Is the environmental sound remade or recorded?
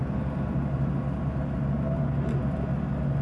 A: recorded